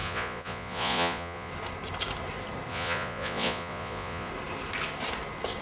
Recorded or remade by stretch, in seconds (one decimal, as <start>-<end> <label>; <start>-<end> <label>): 0.0-1.5 remade; 1.5-2.7 recorded; 2.7-4.3 remade; 4.3-5.6 recorded